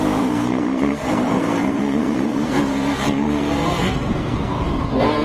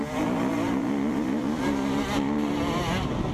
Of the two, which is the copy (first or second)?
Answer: first